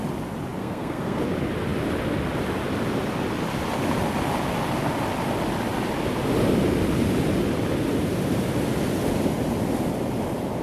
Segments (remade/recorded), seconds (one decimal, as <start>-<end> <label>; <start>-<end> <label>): 0.0-0.6 recorded; 0.6-1.2 remade; 1.2-10.6 recorded